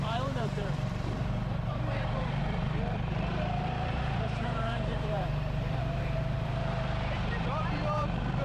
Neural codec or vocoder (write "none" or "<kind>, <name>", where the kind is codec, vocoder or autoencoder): vocoder, BigVGAN v2